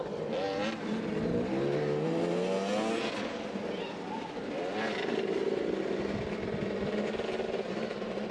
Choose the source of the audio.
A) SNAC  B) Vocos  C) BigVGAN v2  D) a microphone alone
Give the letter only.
D